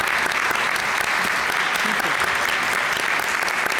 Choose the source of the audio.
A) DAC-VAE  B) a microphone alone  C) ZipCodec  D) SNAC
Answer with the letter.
B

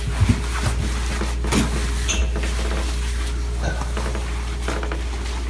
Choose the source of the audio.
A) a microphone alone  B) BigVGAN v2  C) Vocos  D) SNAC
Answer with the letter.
A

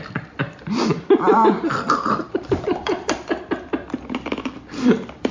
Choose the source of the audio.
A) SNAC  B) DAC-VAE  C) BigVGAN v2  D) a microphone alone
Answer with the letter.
C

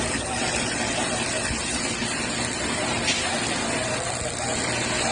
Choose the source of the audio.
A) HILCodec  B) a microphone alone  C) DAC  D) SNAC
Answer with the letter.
B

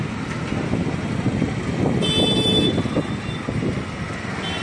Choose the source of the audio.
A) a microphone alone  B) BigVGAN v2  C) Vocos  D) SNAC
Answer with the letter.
A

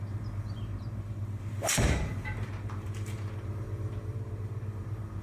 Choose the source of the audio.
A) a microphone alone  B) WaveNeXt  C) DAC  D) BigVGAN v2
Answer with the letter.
D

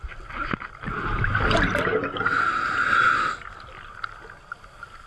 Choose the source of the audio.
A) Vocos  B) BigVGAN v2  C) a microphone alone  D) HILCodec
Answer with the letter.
C